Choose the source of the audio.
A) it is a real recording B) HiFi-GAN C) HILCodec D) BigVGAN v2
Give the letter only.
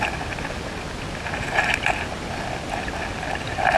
A